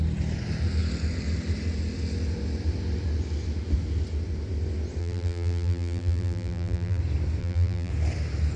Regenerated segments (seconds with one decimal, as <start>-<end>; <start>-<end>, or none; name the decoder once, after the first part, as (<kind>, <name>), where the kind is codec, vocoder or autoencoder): 5.0-7.0 (vocoder, BigVGAN v2); 7.4-7.9